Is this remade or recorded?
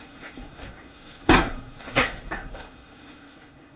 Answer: remade